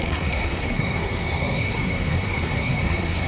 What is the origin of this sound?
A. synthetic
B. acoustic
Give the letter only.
A